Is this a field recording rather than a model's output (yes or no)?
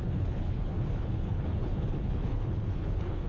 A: no